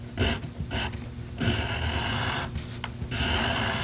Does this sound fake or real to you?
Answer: real